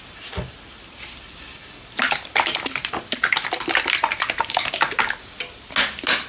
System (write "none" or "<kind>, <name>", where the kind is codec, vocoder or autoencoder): none